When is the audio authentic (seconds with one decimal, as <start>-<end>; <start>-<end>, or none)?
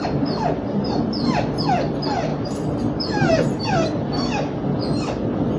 0.0-2.3; 2.8-5.6